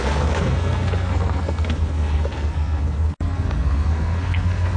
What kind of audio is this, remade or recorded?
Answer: remade